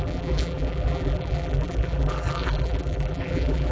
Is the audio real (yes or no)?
no